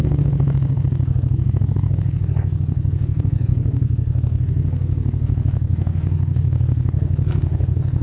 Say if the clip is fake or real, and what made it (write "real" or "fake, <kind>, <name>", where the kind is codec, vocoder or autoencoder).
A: fake, codec, SNAC